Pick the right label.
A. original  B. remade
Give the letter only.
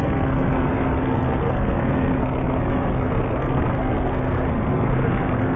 B